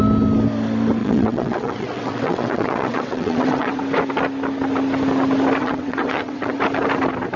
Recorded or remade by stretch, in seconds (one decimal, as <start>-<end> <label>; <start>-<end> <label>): 0.0-1.0 recorded; 1.0-3.8 remade; 3.8-5.6 recorded; 5.6-6.6 remade; 6.6-7.4 recorded

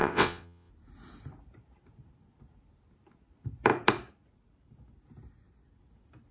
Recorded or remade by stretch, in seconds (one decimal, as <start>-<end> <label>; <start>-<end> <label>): 0.0-0.7 remade; 0.7-6.3 recorded

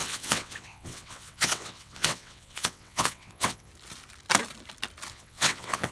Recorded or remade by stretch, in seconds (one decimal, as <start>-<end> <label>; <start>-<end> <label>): 0.0-3.7 remade; 3.7-5.1 recorded; 5.1-5.9 remade

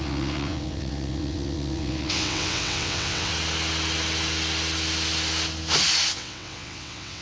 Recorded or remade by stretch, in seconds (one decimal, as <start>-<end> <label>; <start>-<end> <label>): 0.0-3.3 remade; 3.3-6.1 recorded; 6.1-7.2 remade

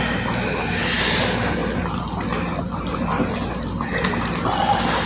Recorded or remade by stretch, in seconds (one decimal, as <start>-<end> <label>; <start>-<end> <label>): 0.0-5.1 recorded

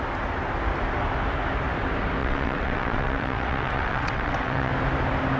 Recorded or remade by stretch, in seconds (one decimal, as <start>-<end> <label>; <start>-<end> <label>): 0.0-2.2 recorded; 2.2-4.7 remade; 4.7-5.4 recorded